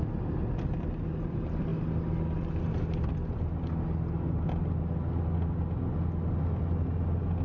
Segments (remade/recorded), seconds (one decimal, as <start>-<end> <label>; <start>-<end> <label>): 0.0-7.4 recorded